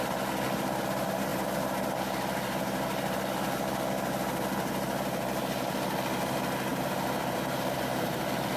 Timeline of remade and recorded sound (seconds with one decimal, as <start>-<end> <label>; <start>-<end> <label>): 0.0-6.7 recorded; 6.7-8.2 remade; 8.2-8.6 recorded